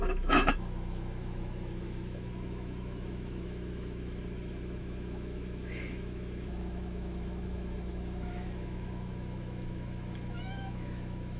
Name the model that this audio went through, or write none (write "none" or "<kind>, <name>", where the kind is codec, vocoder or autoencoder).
autoencoder, DAC-VAE